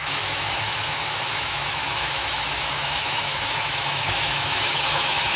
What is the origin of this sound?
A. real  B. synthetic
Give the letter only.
B